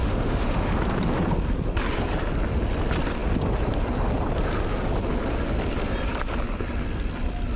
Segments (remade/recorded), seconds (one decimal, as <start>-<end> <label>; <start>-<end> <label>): 0.0-0.7 remade; 0.7-7.6 recorded